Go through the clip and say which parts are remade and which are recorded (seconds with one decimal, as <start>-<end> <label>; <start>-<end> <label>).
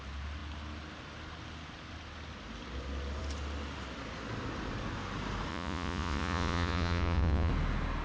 0.0-5.5 recorded; 5.5-7.5 remade; 7.5-8.0 recorded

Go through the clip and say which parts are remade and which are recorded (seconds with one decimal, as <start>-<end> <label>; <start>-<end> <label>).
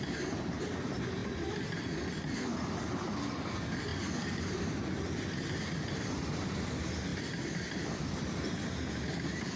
0.0-1.2 recorded; 1.2-3.1 remade; 3.1-7.1 recorded; 7.1-8.5 remade; 8.5-9.6 recorded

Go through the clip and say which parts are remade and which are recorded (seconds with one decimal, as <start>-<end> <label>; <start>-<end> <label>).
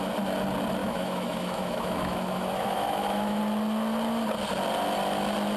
0.0-0.8 recorded; 0.8-3.4 remade; 3.4-5.6 recorded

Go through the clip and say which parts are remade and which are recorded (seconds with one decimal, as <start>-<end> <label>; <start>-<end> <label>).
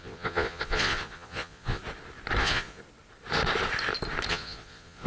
0.0-1.8 remade; 1.8-2.4 recorded; 2.4-2.8 remade; 2.8-4.3 recorded; 4.3-5.1 remade